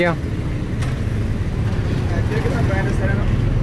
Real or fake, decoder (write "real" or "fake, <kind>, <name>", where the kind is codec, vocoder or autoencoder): real